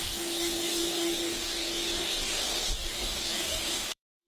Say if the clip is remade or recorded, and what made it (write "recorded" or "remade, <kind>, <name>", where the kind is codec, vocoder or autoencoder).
remade, codec, DAC